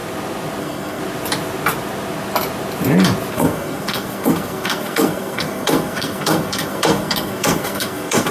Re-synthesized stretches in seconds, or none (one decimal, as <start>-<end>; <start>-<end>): 0.6-1.0; 3.3-8.3